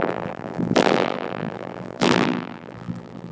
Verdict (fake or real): fake